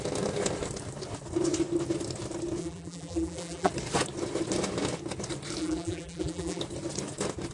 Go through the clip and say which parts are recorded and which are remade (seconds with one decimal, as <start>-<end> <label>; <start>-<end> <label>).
0.0-2.6 recorded; 2.6-3.7 remade; 3.7-5.6 recorded; 5.6-6.6 remade; 6.6-7.5 recorded